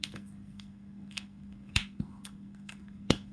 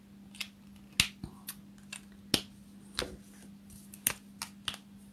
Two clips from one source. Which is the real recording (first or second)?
second